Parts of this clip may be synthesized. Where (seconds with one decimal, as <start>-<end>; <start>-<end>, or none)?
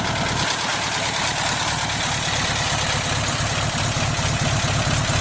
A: 0.7-3.8